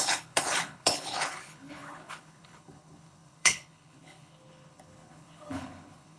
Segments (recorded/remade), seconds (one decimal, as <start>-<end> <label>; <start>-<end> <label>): 0.0-6.2 remade